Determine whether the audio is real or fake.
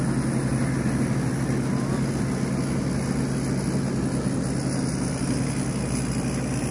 real